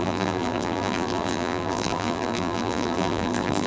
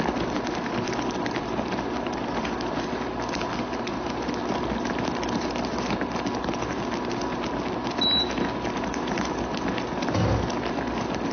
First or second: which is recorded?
second